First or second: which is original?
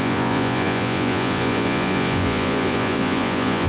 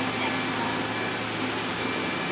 second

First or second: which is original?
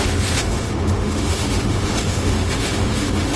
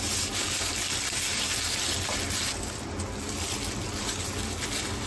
second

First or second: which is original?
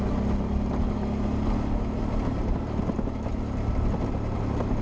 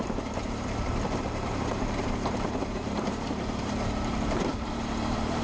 first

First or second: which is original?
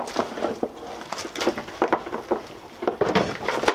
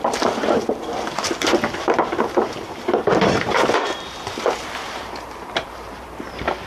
first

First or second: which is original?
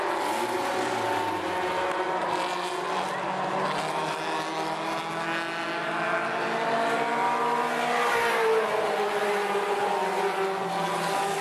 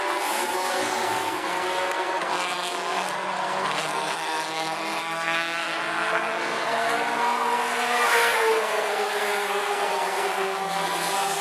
first